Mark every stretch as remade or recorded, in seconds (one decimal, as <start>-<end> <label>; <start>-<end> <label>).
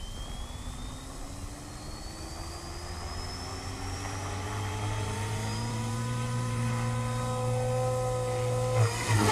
0.0-3.5 recorded; 3.5-6.7 remade; 6.7-9.3 recorded